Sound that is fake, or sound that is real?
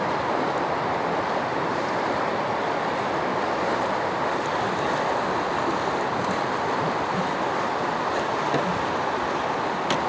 real